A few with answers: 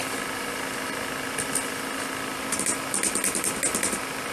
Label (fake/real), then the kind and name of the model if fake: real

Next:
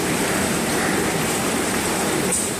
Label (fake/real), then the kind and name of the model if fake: fake, vocoder, BigVGAN v2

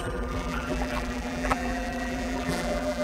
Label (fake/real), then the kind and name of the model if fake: fake, vocoder, BigVGAN v2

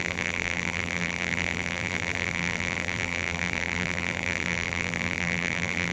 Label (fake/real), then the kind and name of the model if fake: fake, vocoder, BigVGAN v2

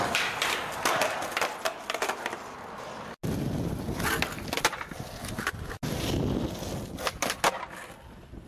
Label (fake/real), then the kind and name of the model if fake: real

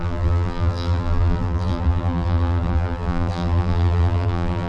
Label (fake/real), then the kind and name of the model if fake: fake, vocoder, BigVGAN v2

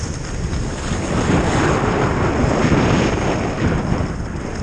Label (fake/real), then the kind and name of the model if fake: real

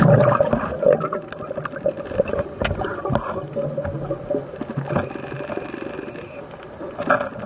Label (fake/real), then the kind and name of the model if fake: real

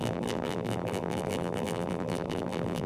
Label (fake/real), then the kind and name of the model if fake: fake, vocoder, BigVGAN v2